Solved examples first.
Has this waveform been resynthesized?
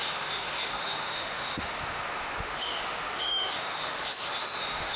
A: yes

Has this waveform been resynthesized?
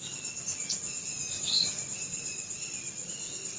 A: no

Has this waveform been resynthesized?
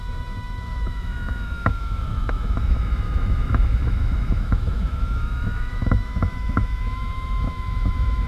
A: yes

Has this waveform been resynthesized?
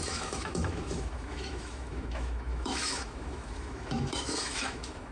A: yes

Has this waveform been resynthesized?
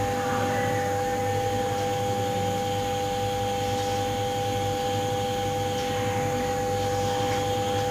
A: no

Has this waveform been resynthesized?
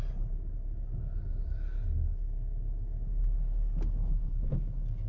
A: no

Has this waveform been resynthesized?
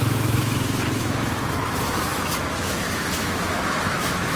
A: yes